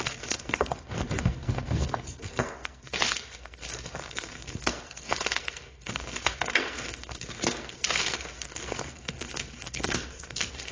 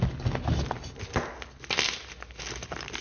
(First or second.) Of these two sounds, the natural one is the second